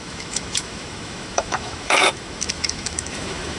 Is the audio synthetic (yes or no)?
yes